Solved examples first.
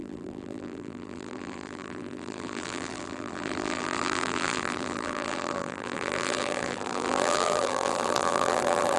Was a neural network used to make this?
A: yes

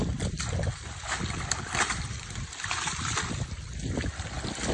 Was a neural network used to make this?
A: no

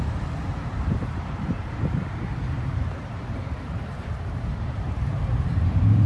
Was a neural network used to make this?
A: yes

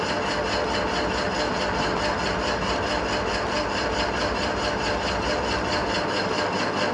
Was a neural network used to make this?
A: no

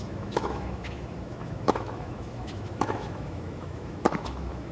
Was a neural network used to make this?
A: yes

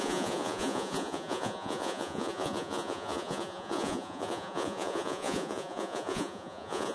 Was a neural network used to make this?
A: yes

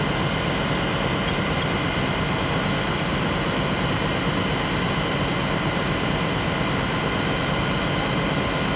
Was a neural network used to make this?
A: no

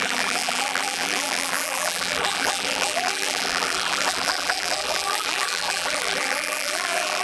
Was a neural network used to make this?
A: yes